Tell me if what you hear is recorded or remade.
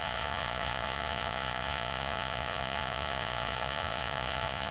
remade